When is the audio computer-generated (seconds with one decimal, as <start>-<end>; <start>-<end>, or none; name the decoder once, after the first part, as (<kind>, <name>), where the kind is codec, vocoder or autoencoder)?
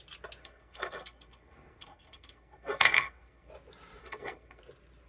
0.4-3.5 (codec, SNAC); 4.0-4.6